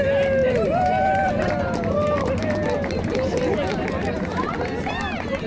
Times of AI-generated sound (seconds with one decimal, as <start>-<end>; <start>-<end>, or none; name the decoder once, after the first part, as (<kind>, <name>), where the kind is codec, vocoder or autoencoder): 0.4-1.3 (vocoder, BigVGAN v2)